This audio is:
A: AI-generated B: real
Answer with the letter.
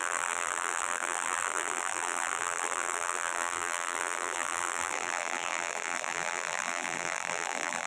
A